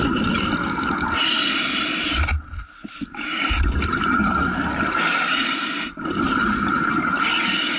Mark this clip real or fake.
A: real